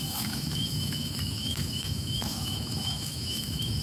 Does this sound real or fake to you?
fake